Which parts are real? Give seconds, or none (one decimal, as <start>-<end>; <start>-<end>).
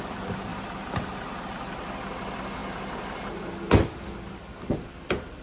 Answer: 0.0-5.4